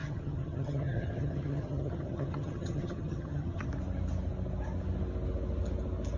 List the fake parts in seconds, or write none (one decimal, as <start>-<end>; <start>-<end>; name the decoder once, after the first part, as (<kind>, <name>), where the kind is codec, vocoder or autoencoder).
0.0-3.7 (vocoder, HiFi-GAN)